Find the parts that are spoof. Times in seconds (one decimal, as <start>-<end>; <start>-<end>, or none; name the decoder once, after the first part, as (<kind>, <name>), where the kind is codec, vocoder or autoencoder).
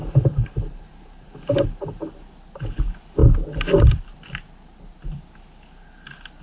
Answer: 0.0-2.1 (vocoder, BigVGAN v2)